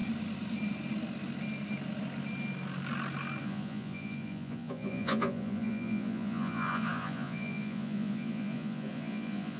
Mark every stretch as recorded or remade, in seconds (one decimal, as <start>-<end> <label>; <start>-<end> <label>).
0.0-3.4 recorded; 3.4-9.6 remade